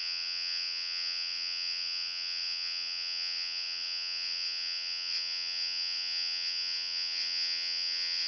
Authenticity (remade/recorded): remade